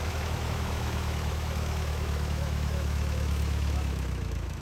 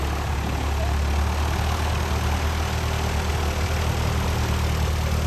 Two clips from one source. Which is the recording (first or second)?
second